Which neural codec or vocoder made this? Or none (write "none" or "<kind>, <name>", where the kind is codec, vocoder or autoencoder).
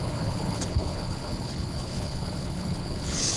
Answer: codec, HILCodec